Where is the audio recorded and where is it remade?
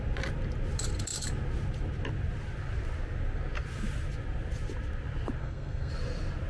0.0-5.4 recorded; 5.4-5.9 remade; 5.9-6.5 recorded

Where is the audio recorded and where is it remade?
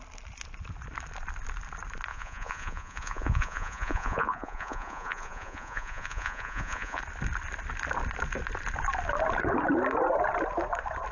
0.0-2.1 recorded; 2.1-7.0 remade; 7.0-11.1 recorded